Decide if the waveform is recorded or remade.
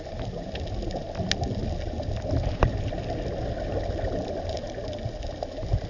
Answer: recorded